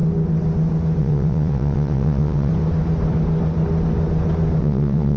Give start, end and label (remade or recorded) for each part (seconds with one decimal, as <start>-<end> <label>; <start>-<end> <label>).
0.0-1.0 recorded; 1.0-2.5 remade; 2.5-4.6 recorded; 4.6-5.2 remade